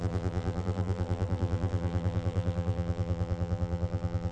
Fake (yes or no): yes